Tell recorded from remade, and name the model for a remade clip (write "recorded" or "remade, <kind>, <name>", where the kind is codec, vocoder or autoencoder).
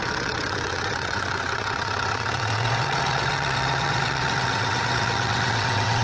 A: remade, vocoder, WaveNeXt